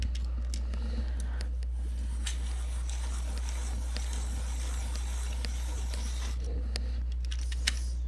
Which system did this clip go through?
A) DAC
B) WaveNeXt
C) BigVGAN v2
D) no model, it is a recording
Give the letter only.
D